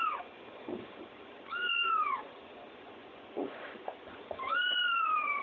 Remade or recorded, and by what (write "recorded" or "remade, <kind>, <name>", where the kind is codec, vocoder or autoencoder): remade, vocoder, Vocos